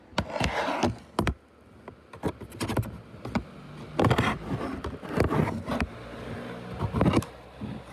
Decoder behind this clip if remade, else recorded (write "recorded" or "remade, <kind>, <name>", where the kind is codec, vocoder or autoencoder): recorded